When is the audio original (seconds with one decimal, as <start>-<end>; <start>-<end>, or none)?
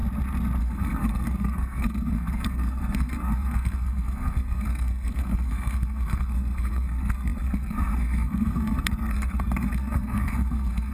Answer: 0.0-0.6